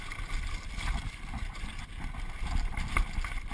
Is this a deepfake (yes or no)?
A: no